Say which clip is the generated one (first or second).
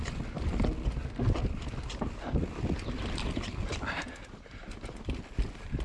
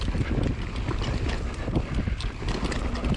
first